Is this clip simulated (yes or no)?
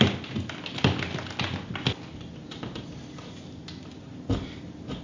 no